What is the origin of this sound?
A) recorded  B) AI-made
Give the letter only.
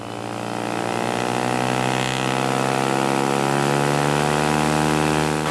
A